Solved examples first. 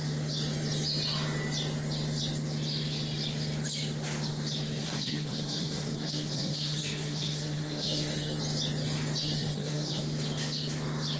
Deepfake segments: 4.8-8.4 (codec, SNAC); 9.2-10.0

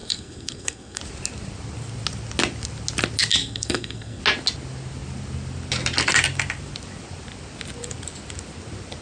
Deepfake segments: 0.0-1.0 (codec, SNAC); 3.4-4.2

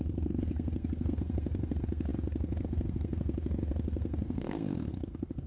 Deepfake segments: 0.0-5.5 (codec, SNAC)